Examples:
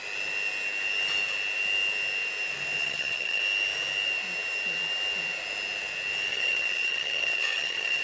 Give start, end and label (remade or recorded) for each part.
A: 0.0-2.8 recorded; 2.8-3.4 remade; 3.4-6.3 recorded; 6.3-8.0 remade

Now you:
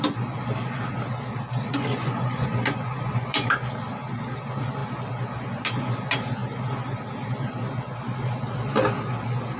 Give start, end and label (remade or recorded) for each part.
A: 0.0-1.9 recorded; 1.9-3.5 remade; 3.5-9.6 recorded

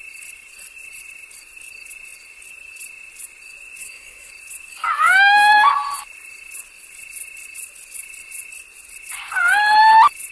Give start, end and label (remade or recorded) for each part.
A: 0.0-3.8 recorded; 3.8-4.3 remade; 4.3-4.7 recorded; 4.7-5.7 remade; 5.7-10.3 recorded

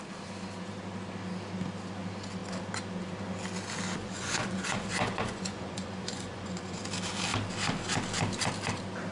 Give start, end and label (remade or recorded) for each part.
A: 0.0-4.0 recorded; 4.0-6.8 remade; 6.8-9.1 recorded

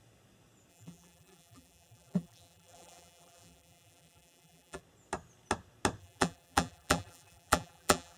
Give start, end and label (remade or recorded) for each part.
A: 0.0-0.7 recorded; 0.7-4.8 remade; 4.8-6.0 recorded; 6.0-8.2 remade